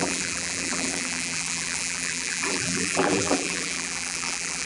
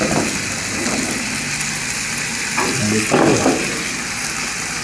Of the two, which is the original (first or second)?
second